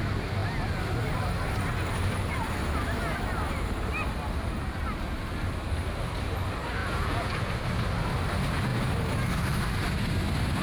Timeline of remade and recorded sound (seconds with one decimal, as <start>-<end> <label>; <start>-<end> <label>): 0.0-6.8 recorded; 6.8-7.5 remade; 7.5-10.6 recorded